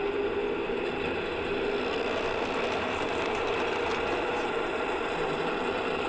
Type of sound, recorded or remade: recorded